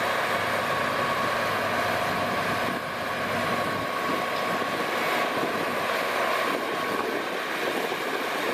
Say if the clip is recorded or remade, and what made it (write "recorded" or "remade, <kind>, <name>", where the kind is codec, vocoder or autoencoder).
recorded